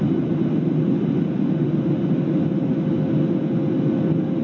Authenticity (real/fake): real